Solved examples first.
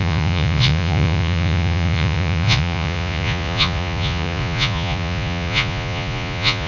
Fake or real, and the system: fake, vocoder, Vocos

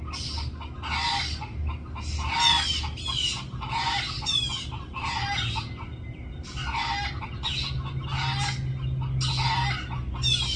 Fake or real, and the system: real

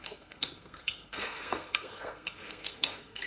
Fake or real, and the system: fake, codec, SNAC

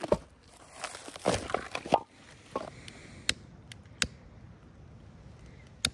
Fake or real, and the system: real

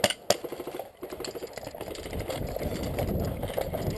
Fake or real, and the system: real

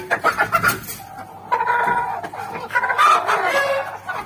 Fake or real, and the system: real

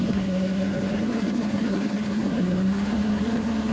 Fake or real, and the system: fake, codec, SNAC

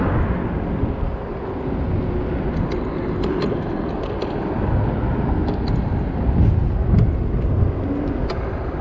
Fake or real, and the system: real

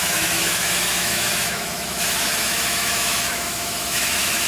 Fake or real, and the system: fake, autoencoder, DAC-VAE